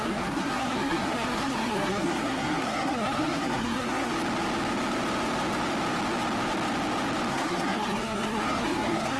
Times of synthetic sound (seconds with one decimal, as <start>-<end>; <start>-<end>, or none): 0.0-4.1; 7.3-9.2